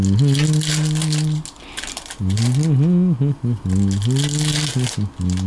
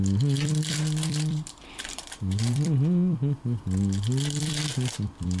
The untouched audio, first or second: first